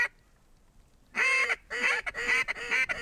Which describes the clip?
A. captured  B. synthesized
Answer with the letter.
B